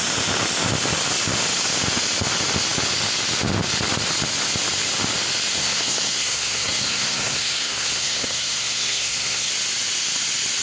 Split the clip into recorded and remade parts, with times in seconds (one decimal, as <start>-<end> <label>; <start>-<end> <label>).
0.0-5.6 recorded; 5.6-9.5 remade; 9.5-10.6 recorded